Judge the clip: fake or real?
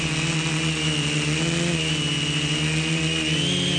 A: real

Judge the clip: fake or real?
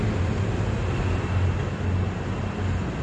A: real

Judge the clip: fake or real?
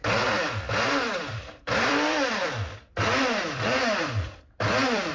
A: fake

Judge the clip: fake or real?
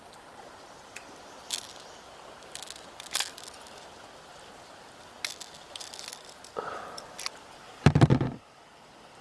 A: real